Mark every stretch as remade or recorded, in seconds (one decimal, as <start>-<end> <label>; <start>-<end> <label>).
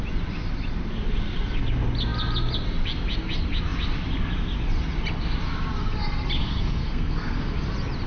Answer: 0.0-6.4 recorded; 6.4-7.5 remade; 7.5-8.1 recorded